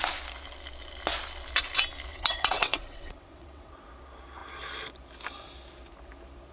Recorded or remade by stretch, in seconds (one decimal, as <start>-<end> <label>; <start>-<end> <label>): 0.0-2.1 recorded; 2.1-3.7 remade; 3.7-6.5 recorded